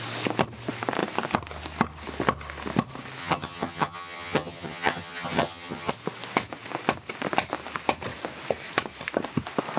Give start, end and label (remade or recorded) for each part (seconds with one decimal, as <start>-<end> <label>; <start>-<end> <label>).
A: 0.0-3.2 recorded; 3.2-5.9 remade; 5.9-9.8 recorded